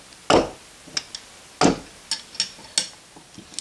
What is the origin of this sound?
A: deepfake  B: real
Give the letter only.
B